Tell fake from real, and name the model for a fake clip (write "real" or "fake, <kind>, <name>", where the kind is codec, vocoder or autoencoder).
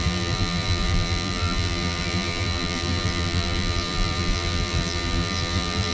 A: fake, vocoder, BigVGAN v2